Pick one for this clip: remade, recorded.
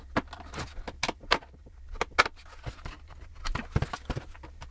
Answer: recorded